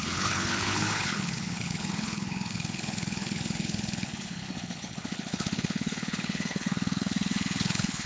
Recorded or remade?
remade